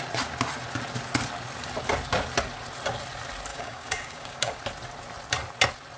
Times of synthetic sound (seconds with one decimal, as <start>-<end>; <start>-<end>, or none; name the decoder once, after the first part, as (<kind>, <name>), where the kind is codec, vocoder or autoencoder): 3.5-4.6 (codec, DAC)